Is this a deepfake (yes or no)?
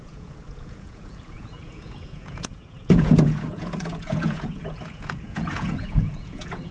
yes